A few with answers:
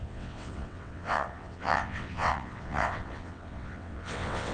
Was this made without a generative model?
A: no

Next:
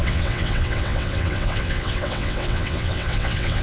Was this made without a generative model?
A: no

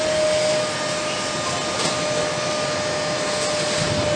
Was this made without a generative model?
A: yes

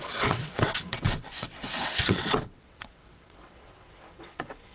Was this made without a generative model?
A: no